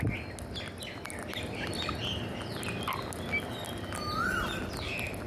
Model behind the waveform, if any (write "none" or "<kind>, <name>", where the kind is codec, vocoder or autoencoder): none